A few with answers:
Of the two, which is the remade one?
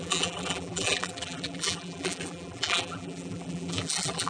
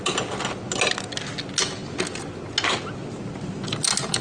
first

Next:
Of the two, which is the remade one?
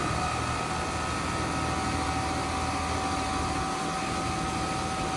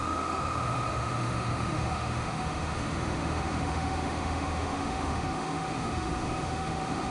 second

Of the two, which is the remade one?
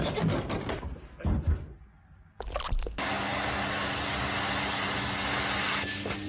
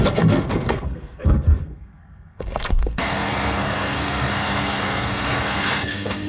second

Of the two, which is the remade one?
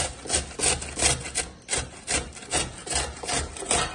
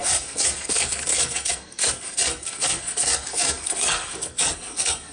second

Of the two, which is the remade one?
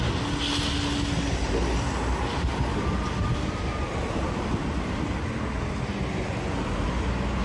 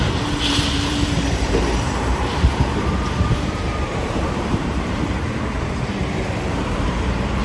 second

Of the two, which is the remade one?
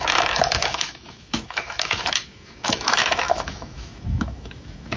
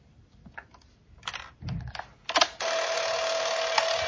first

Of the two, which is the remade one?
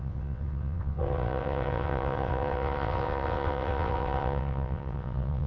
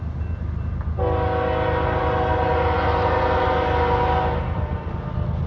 first